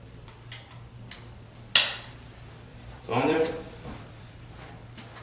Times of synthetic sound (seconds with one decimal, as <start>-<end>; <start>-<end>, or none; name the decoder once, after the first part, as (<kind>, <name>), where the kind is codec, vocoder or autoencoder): 2.7-4.3 (vocoder, BigVGAN v2)